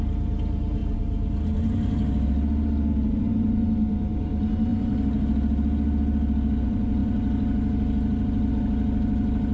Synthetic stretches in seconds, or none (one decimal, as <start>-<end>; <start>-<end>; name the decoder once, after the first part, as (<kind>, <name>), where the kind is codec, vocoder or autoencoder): none